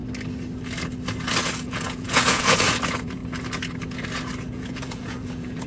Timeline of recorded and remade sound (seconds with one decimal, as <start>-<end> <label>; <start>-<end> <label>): 0.0-1.3 recorded; 1.3-3.2 remade; 3.2-4.5 recorded; 4.5-5.7 remade